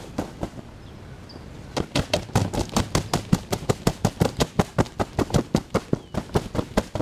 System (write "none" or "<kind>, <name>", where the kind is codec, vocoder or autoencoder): none